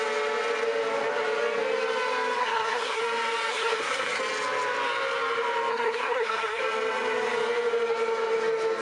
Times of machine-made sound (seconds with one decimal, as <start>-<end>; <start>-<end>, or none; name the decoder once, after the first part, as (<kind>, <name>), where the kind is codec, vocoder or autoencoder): 2.4-3.0 (codec, SNAC); 3.5-4.2; 5.7-6.6